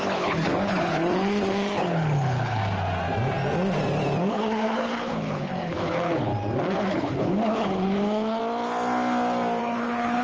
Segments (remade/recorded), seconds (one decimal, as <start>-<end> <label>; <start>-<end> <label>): 0.0-2.6 remade; 2.6-4.3 recorded; 4.3-6.3 remade; 6.3-6.9 recorded; 6.9-8.4 remade; 8.4-9.6 recorded; 9.6-10.2 remade